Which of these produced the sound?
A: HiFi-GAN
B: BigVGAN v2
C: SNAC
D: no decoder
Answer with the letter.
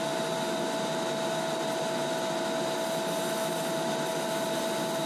D